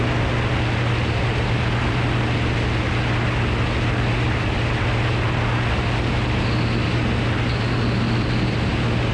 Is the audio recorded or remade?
recorded